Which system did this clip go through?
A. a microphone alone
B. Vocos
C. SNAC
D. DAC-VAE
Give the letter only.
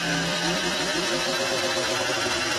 A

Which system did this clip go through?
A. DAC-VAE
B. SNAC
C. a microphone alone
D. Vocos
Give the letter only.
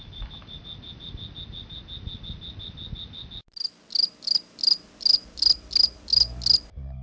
C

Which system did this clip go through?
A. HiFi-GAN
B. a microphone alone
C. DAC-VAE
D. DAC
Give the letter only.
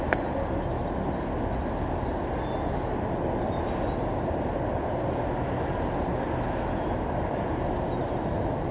B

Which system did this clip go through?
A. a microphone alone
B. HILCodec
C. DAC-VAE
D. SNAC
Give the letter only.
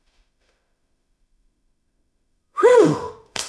C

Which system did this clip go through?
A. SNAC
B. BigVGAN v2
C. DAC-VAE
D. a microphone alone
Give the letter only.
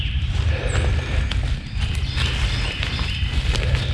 D